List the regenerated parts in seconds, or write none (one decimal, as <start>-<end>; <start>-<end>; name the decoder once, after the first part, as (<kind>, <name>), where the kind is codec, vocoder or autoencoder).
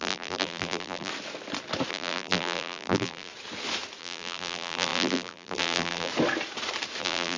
0.0-1.1 (vocoder, BigVGAN v2); 1.9-3.3; 4.0-6.1; 7.0-7.4